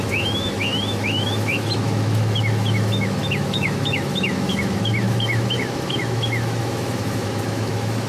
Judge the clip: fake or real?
fake